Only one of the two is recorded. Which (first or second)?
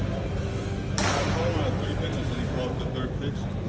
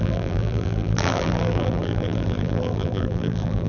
first